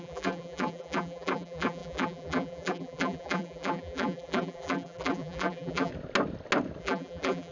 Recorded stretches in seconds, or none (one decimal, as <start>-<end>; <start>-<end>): 5.9-6.8